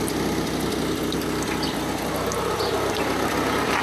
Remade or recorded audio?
recorded